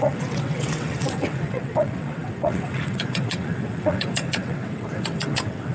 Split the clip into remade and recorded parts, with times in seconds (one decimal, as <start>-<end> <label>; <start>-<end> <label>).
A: 0.0-5.7 remade